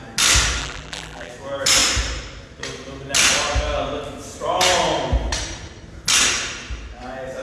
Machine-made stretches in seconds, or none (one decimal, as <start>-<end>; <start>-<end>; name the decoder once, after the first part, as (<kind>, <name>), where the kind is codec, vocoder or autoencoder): 0.6-1.3 (vocoder, BigVGAN v2)